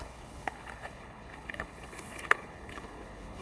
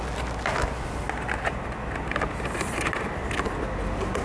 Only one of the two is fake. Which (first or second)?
first